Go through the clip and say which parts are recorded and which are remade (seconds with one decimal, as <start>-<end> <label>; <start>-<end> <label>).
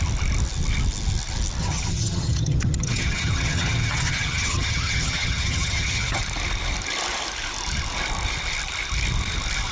0.0-1.6 recorded; 1.6-6.2 remade; 6.2-9.7 recorded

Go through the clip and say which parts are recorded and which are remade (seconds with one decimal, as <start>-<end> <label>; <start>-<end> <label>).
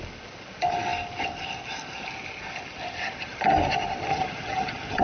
0.0-4.1 recorded; 4.1-5.0 remade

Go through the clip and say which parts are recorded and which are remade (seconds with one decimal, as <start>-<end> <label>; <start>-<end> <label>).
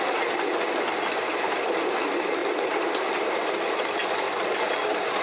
0.0-5.2 recorded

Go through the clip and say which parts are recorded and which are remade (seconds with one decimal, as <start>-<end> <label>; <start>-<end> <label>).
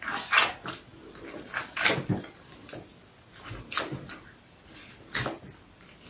0.0-6.1 recorded